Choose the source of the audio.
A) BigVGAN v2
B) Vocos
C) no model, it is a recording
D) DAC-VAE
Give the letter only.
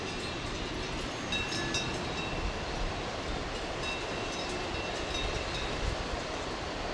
C